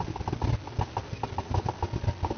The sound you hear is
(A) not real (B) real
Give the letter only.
B